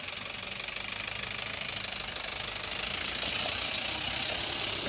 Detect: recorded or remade recorded